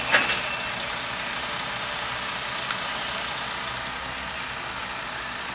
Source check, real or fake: real